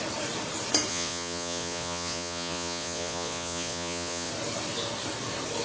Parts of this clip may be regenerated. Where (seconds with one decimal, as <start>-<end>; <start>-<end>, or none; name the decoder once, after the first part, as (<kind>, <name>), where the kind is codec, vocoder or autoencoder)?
0.9-4.3 (vocoder, Vocos)